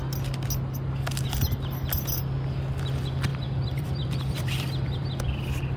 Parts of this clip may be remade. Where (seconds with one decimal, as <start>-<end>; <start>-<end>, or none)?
3.3-5.2